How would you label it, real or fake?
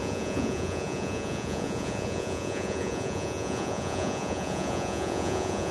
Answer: fake